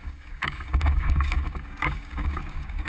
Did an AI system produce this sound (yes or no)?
yes